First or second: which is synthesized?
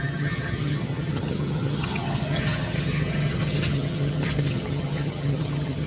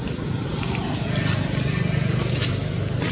first